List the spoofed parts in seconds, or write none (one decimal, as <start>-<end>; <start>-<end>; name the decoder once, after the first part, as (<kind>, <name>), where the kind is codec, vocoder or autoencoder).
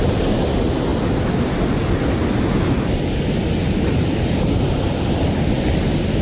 none